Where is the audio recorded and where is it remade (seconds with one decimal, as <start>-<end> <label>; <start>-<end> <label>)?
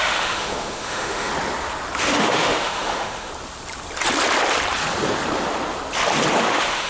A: 0.0-1.3 remade; 1.3-2.0 recorded; 2.0-3.3 remade; 3.3-6.4 recorded; 6.4-6.9 remade